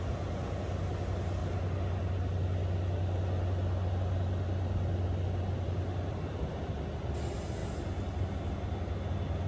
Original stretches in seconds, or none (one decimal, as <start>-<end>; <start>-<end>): 0.0-9.5